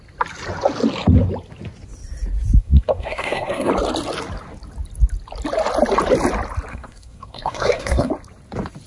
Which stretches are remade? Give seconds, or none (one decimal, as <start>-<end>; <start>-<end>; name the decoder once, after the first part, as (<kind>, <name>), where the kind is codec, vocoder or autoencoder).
2.6-3.7 (codec, SNAC); 6.7-8.1